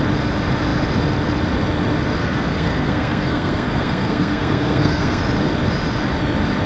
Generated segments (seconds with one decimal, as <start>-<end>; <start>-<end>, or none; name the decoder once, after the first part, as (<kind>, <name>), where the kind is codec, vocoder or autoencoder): 2.2-5.2 (codec, SNAC)